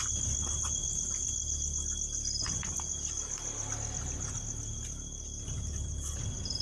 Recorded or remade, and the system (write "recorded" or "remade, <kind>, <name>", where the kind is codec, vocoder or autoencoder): recorded